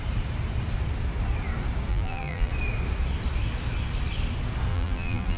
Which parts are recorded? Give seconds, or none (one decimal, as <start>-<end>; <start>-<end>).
0.0-1.9; 2.5-4.7